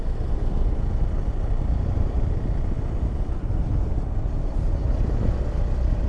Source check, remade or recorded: recorded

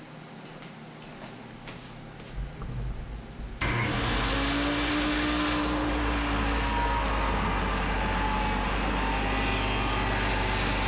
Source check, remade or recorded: recorded